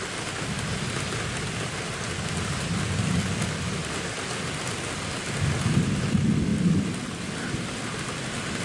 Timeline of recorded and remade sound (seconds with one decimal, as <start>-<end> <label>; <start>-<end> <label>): 0.0-8.6 recorded